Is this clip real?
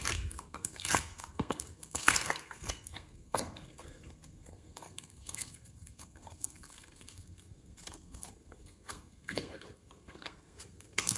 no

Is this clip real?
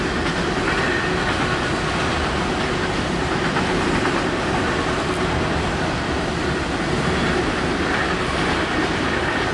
yes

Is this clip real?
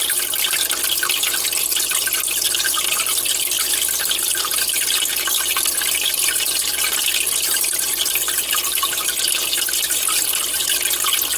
yes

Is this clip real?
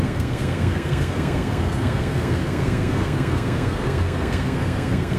no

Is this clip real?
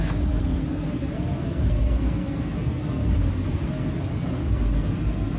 no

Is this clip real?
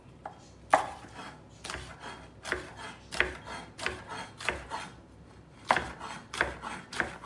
yes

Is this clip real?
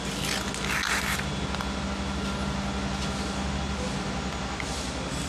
yes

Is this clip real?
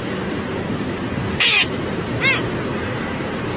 yes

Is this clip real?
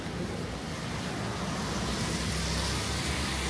yes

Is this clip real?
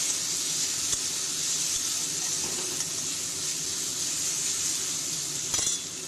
yes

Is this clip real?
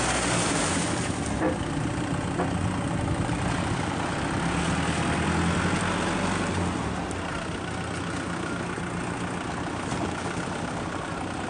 yes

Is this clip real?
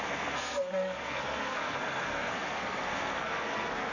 no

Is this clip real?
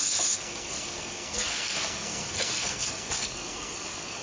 no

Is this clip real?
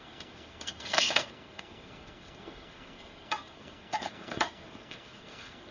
no